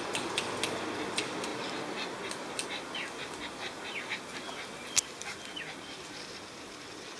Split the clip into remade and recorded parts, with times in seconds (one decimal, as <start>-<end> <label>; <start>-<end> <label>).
0.0-7.2 recorded